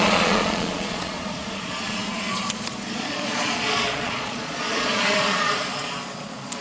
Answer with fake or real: fake